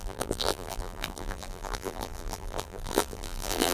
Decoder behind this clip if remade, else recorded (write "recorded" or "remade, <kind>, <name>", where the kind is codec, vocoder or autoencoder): remade, vocoder, BigVGAN v2